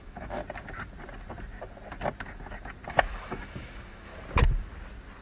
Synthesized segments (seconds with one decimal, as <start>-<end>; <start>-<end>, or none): 0.0-0.4; 2.9-4.1